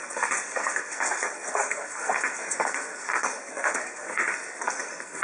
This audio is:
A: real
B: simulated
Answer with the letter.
B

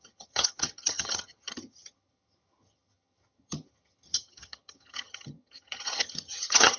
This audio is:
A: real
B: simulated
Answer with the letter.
B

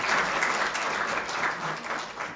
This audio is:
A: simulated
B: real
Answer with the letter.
B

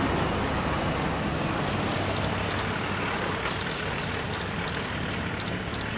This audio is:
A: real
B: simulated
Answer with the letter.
A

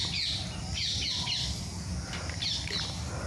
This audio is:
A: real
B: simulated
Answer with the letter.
A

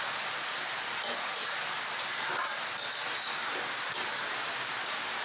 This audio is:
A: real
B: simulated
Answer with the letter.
A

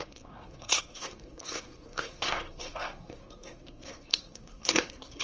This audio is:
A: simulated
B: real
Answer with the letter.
A